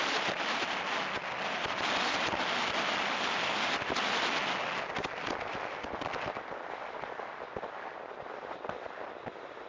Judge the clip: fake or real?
real